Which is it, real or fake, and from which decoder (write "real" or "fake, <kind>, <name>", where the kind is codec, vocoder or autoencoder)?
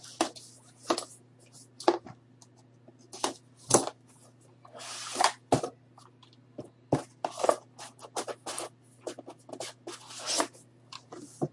real